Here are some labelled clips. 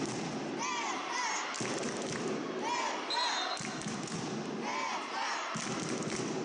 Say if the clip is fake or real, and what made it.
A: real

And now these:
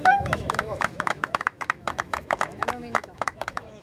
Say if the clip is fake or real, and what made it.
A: fake, autoencoder, DAC-VAE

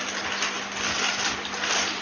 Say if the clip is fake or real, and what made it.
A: real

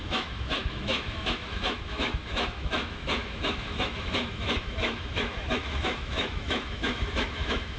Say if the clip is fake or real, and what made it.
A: fake, autoencoder, DAC-VAE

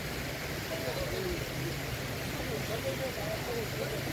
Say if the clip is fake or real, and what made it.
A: real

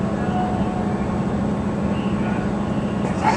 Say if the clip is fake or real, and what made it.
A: real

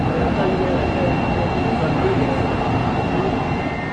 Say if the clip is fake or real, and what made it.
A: real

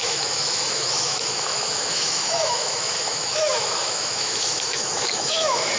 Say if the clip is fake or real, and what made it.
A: fake, autoencoder, DAC-VAE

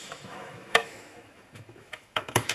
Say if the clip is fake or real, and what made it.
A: fake, autoencoder, DAC-VAE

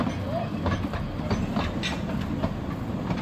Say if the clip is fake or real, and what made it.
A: real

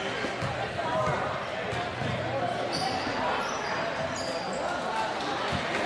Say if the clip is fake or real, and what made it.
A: real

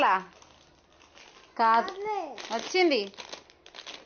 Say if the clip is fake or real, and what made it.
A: real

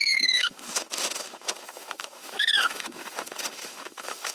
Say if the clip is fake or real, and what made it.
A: fake, autoencoder, DAC-VAE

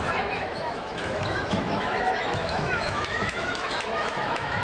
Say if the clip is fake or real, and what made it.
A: fake, autoencoder, DAC-VAE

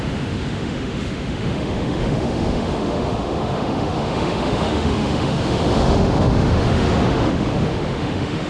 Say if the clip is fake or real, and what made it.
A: fake, autoencoder, DAC-VAE